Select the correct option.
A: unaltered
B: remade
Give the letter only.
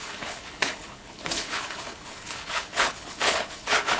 B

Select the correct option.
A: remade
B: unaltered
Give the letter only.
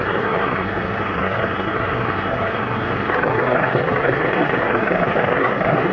A